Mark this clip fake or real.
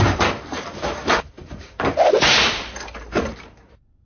fake